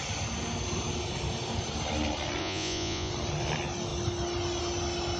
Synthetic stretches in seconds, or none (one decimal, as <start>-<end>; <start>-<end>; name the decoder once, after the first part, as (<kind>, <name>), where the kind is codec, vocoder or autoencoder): 2.4-3.1 (vocoder, Vocos)